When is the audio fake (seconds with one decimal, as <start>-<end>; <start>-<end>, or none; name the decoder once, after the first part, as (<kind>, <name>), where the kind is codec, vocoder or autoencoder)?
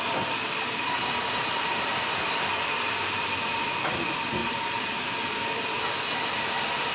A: 0.0-6.9 (vocoder, BigVGAN v2)